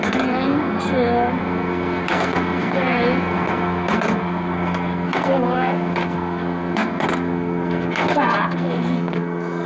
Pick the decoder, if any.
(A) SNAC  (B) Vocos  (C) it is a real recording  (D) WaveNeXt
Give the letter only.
A